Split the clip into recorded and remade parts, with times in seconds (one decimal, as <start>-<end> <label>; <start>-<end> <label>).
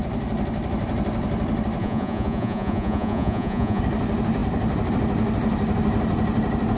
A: 0.0-1.8 recorded; 1.8-3.8 remade; 3.8-6.8 recorded